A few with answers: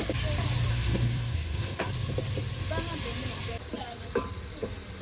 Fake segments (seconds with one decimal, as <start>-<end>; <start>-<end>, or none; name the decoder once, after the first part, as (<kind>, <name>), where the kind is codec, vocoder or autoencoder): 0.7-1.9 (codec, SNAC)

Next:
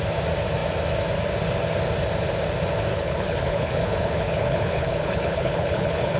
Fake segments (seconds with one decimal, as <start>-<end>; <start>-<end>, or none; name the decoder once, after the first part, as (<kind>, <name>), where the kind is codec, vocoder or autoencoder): 2.9-6.2 (codec, HILCodec)

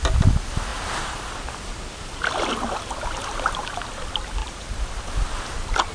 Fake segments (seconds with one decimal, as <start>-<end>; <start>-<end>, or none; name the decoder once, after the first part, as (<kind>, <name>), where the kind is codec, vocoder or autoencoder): 0.7-2.4 (vocoder, BigVGAN v2); 4.4-5.1

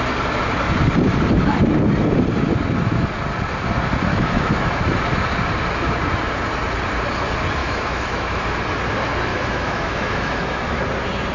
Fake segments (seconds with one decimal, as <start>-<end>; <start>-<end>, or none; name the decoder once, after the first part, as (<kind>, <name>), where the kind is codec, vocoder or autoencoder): 4.1-4.8 (autoencoder, DAC-VAE); 7.6-8.4; 9.3-10.8

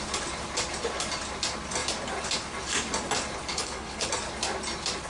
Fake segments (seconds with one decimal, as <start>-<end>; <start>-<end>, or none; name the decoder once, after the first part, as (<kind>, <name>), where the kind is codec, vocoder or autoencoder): 3.5-4.1 (codec, HILCodec)

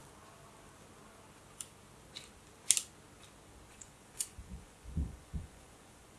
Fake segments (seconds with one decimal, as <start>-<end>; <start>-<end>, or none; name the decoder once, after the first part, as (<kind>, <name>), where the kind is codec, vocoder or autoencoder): 3.7-6.2 (vocoder, Vocos)

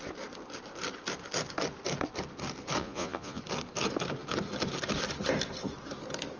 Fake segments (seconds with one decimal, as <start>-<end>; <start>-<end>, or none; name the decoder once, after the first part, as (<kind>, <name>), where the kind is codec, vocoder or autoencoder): 2.8-3.4 (vocoder, Vocos)